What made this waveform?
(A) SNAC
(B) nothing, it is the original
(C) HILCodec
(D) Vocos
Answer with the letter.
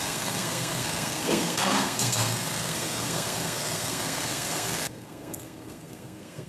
A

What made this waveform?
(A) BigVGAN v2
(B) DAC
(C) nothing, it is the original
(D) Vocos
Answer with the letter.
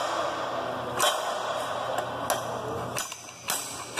C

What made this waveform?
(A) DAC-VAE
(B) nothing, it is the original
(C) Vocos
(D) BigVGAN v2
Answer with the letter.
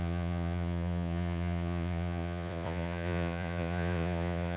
C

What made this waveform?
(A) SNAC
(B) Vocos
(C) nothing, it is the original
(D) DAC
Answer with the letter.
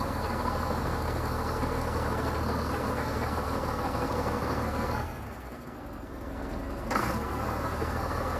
A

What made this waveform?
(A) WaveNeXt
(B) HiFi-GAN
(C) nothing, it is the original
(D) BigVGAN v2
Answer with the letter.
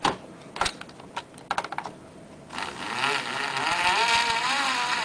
C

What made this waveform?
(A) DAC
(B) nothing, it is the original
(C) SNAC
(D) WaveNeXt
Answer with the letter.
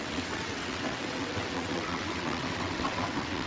D